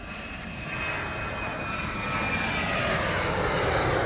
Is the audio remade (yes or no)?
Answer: no